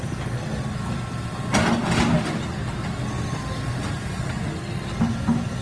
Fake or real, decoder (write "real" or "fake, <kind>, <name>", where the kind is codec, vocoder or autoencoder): real